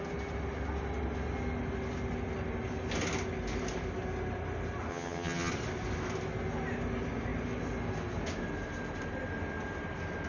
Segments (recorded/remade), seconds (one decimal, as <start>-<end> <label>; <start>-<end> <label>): 0.0-4.9 recorded; 4.9-5.5 remade; 5.5-10.3 recorded